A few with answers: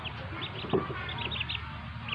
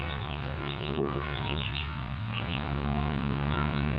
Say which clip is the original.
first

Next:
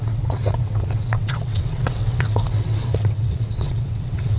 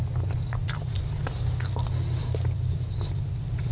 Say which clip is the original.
second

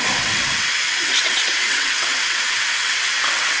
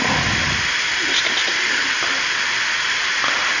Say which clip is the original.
second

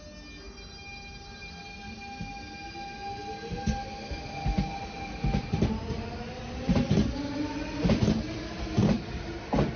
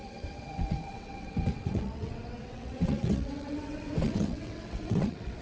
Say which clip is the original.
first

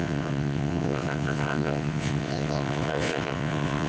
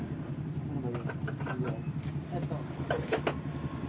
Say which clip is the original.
second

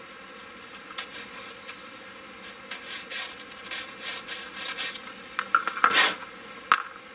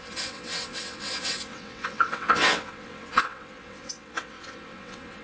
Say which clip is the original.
first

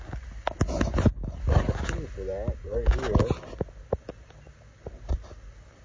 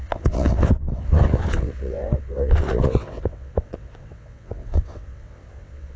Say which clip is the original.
first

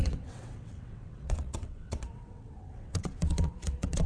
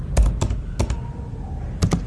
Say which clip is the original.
second